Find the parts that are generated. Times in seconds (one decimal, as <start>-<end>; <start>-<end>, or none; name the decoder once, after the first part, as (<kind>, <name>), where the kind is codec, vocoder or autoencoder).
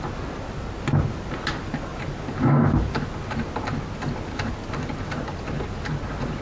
none